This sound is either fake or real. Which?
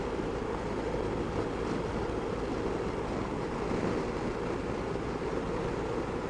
real